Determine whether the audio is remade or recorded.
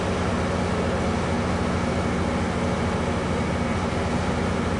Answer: recorded